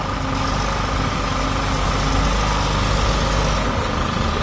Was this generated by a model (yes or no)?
no